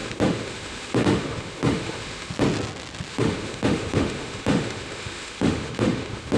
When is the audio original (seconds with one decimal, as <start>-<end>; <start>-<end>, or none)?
2.3-3.1